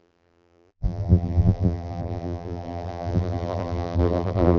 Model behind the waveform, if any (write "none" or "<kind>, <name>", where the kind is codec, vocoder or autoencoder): vocoder, BigVGAN v2